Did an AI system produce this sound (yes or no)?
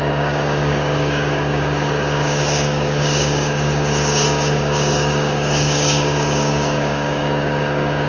yes